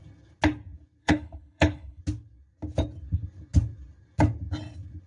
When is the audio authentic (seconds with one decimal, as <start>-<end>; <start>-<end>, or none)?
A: 0.0-1.0; 2.0-5.1